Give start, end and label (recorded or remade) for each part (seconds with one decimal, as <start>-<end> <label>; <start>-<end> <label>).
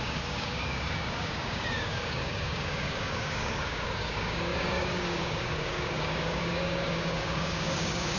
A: 0.0-8.2 remade